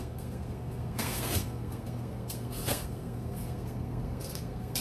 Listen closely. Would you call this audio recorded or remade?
remade